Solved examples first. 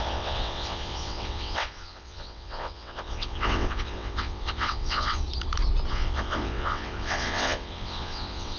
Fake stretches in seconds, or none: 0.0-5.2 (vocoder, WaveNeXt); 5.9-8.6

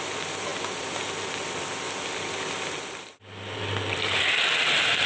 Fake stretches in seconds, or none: none

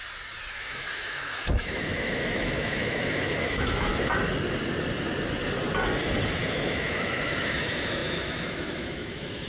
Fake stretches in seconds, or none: 0.5-3.9 (autoencoder, DAC-VAE); 6.5-9.5

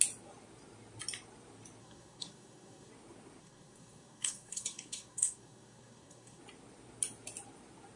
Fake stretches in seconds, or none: 1.8-2.9 (codec, SNAC); 3.4-6.4

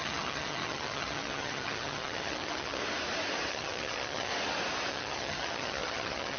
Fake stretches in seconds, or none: 0.0-2.8 (vocoder, HiFi-GAN); 3.5-4.3; 4.9-6.4

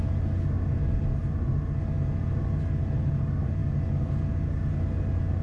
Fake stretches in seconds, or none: none